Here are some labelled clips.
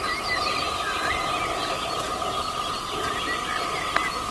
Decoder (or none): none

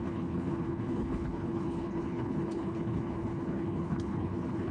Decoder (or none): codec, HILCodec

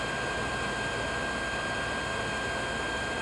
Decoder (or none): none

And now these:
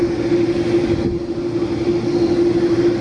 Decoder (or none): none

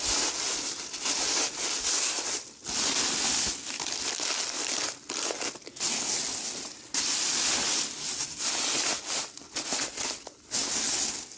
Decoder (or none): none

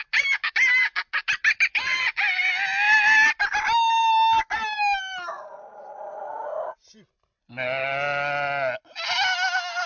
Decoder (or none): none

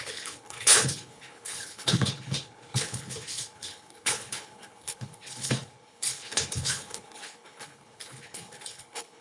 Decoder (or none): codec, HILCodec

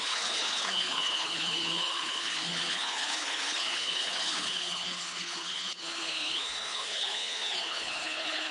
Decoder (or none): codec, HILCodec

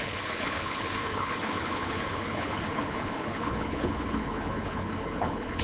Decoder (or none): codec, HILCodec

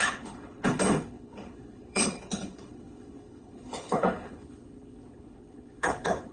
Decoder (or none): codec, HILCodec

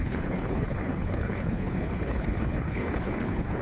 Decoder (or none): codec, HILCodec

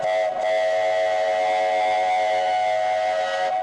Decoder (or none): none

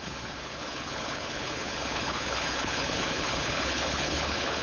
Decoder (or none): codec, HILCodec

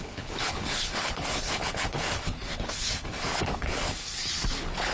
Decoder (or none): codec, HILCodec